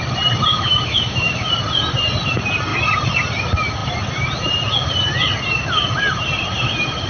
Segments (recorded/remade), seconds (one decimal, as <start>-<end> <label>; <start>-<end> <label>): 0.0-0.5 recorded; 0.5-1.5 remade; 1.5-7.1 recorded